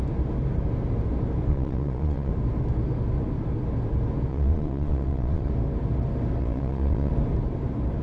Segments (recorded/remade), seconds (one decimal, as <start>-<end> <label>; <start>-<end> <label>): 0.0-1.5 recorded; 1.5-2.3 remade; 2.3-4.3 recorded; 4.3-5.5 remade; 5.5-6.4 recorded; 6.4-7.1 remade; 7.1-8.0 recorded